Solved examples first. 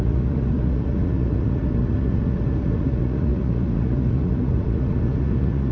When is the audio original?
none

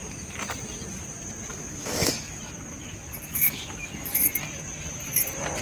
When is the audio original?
0.0-1.5; 2.4-3.3; 3.9-5.6

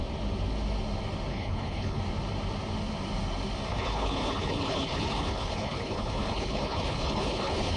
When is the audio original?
0.0-1.3; 2.0-3.7

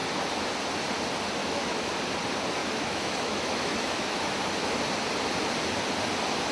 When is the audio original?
0.0-1.4; 1.9-2.6; 4.3-6.5

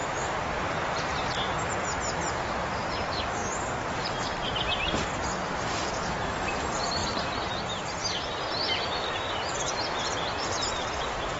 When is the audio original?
0.0-2.3; 3.4-4.1; 7.0-10.7

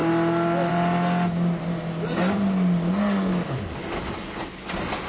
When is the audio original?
0.0-5.1

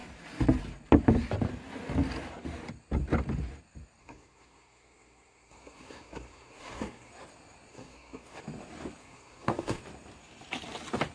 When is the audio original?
0.0-4.0; 7.1-7.7; 8.4-9.0; 9.8-11.1

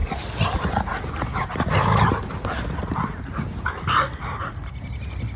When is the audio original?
0.0-5.4